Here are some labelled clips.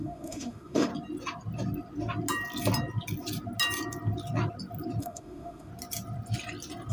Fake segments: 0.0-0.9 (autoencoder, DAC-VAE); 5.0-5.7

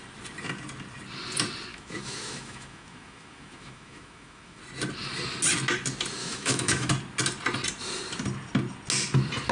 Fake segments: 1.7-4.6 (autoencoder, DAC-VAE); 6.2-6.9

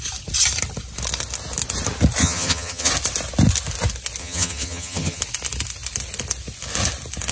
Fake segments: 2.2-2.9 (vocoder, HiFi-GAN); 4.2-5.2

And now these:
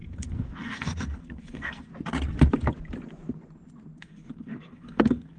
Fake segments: 0.0-1.9 (codec, SNAC); 4.0-5.4

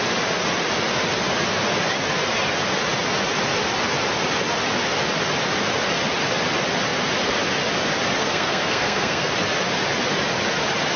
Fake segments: 8.2-9.3 (codec, SNAC)

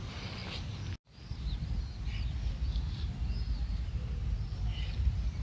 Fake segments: none